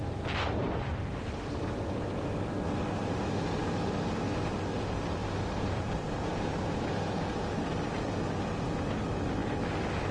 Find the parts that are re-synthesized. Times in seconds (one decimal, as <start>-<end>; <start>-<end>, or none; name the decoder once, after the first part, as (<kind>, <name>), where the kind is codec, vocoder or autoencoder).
0.9-2.2 (vocoder, BigVGAN v2); 5.2-6.5